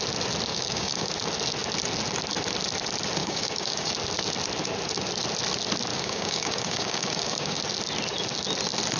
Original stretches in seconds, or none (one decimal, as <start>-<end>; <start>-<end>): 0.0-0.5; 1.1-3.2; 3.9-5.9; 7.6-9.0